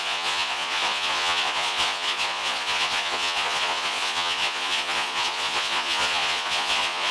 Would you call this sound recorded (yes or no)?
no